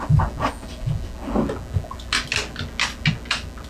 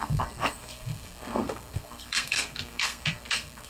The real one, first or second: first